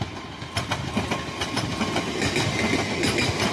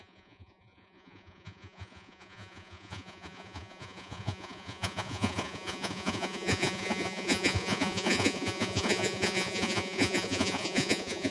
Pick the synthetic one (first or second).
second